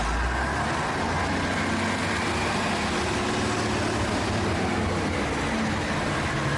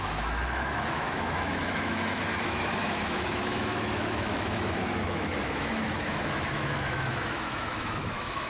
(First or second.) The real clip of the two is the first